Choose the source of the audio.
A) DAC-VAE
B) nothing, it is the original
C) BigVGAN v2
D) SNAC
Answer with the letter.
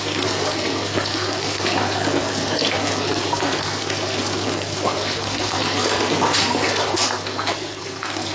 D